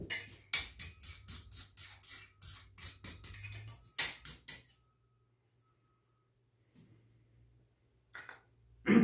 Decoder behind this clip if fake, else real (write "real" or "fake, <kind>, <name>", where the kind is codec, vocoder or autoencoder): real